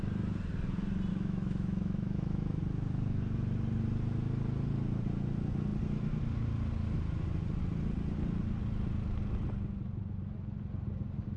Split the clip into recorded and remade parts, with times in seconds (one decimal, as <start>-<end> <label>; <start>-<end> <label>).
0.0-1.1 recorded; 1.1-2.6 remade; 2.6-11.4 recorded